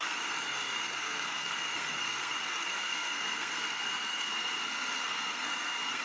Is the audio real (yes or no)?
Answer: no